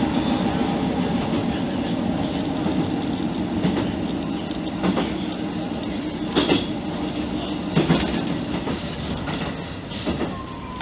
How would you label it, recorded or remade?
recorded